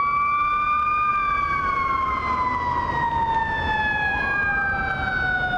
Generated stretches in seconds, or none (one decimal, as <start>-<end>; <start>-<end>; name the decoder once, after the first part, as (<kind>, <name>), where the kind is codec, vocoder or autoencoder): none